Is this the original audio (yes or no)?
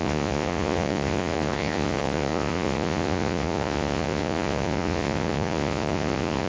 no